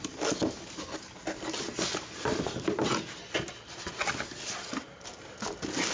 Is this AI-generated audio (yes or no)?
no